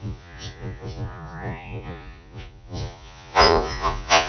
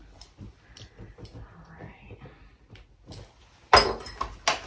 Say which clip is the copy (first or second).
first